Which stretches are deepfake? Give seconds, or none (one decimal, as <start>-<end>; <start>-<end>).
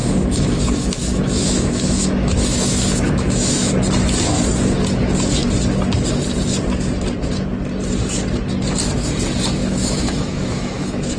0.0-3.8; 9.6-11.2